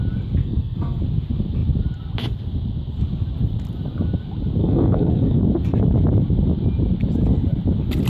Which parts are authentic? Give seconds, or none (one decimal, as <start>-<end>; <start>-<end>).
0.0-0.4; 1.0-4.6; 5.4-8.1